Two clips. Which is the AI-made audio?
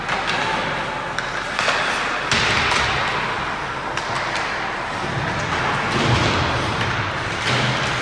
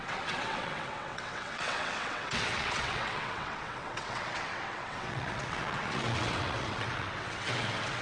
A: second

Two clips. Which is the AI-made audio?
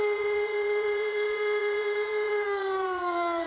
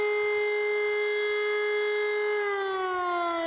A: first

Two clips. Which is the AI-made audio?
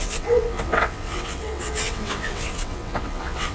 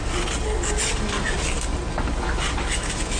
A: first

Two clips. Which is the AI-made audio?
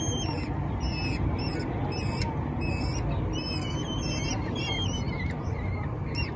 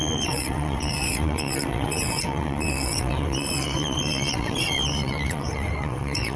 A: second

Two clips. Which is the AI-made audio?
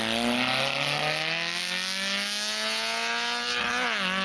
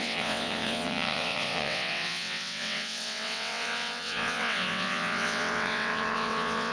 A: second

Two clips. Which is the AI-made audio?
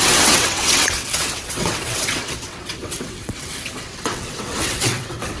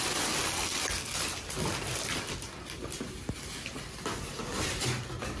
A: first